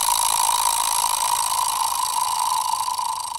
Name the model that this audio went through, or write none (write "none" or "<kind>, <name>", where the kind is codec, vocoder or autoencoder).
none